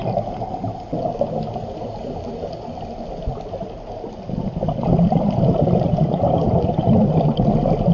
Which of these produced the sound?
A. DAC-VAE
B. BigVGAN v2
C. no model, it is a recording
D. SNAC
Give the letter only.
C